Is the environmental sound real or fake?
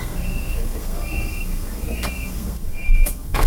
fake